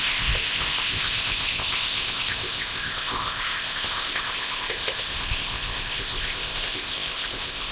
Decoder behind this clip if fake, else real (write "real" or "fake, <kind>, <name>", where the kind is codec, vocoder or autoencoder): fake, codec, ZipCodec